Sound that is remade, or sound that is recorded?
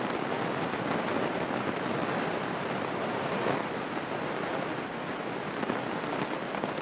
recorded